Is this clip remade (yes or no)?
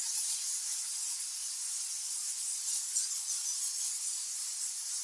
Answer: no